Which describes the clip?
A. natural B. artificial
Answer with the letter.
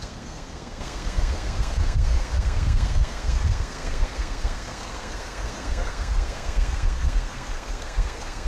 B